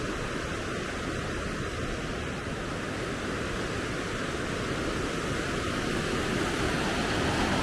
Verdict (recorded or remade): recorded